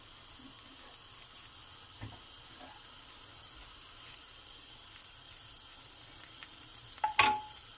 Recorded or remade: recorded